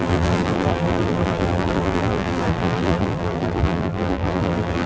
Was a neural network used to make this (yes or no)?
yes